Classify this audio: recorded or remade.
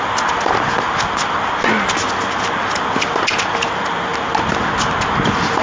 recorded